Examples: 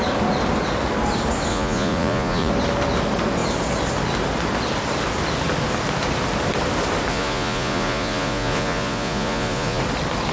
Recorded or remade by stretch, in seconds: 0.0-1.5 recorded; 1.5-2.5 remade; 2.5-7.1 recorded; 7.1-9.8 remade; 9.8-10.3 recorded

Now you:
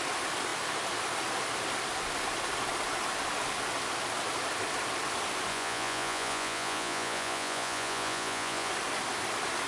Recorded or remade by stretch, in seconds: 0.0-5.5 recorded; 5.5-8.7 remade; 8.7-9.7 recorded

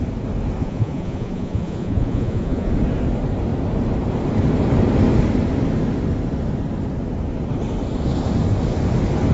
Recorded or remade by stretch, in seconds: 0.0-0.6 recorded; 0.6-2.7 remade; 2.7-9.3 recorded

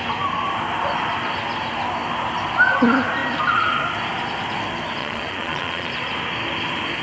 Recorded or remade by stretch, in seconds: 0.0-5.0 recorded; 5.0-5.9 remade; 5.9-7.0 recorded